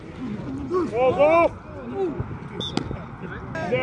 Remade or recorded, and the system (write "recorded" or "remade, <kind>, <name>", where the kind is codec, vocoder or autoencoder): recorded